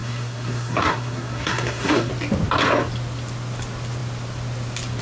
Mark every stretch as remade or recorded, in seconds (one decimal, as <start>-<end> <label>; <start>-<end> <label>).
0.0-2.1 remade; 2.1-5.0 recorded